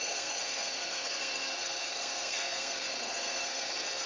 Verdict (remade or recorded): remade